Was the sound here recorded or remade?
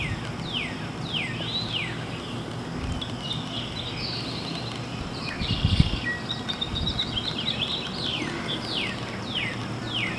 recorded